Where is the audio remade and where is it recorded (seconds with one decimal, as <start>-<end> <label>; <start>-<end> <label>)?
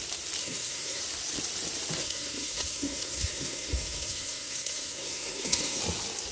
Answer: 0.0-0.4 recorded; 0.4-1.0 remade; 1.0-2.0 recorded; 2.0-5.8 remade; 5.8-6.3 recorded